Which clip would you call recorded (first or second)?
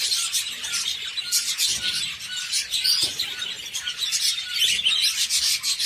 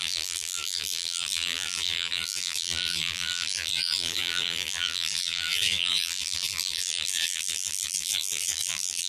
first